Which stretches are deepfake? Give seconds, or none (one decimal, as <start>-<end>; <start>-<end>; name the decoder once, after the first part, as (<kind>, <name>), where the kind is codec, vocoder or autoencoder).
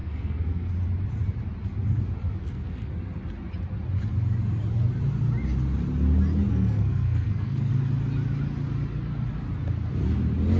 0.0-0.7 (codec, SNAC); 2.4-2.9; 6.5-7.7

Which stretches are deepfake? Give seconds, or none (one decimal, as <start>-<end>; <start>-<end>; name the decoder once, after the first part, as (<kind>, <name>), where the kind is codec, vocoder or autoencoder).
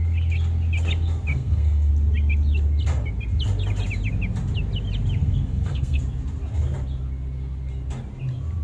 1.3-1.9 (codec, SNAC); 5.2-6.0